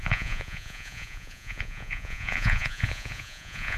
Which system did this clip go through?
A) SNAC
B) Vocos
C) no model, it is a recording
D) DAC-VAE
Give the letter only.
B